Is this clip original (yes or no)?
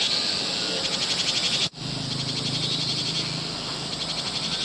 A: yes